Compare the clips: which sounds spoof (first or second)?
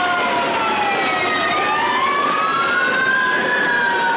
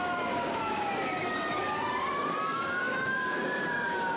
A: second